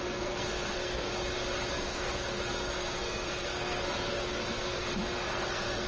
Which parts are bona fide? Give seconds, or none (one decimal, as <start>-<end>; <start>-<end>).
1.1-1.7